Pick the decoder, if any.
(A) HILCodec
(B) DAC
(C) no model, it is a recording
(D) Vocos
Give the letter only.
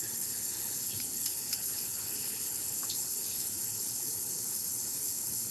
A